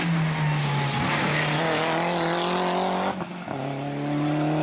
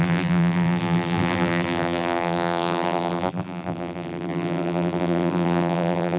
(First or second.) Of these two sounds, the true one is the first